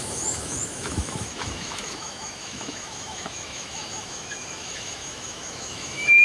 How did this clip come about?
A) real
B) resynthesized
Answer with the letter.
B